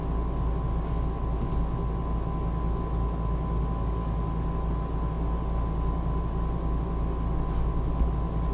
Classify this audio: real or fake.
real